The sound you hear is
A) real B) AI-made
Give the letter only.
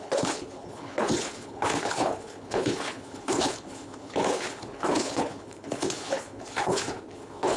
B